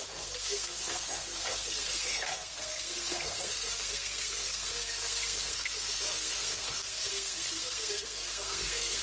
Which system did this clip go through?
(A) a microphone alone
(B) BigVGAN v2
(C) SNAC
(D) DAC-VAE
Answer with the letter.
C